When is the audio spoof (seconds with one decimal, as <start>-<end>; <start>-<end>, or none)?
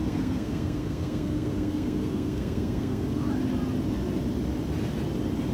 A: 0.0-3.3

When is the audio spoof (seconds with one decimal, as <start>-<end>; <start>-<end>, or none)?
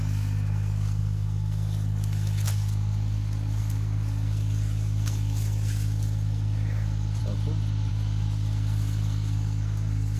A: 0.0-7.2; 7.9-10.2